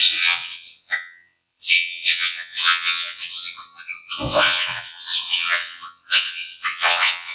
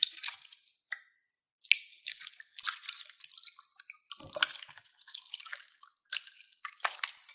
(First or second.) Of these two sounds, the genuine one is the second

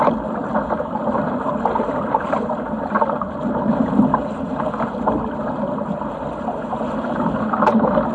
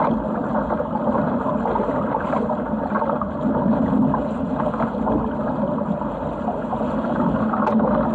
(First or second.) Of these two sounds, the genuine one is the second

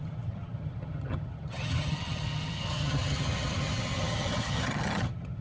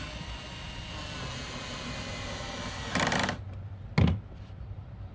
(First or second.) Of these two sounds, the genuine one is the second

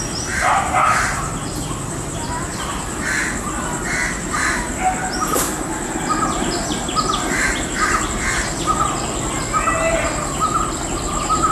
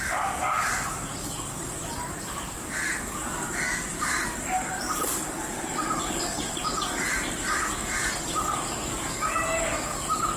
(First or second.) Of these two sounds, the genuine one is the first